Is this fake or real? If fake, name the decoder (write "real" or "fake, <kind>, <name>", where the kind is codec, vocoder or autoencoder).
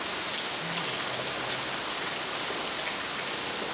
real